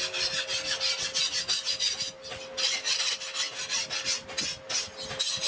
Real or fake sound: real